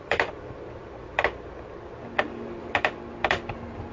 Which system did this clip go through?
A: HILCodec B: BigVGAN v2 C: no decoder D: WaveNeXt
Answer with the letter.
B